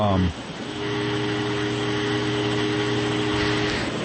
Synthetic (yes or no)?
no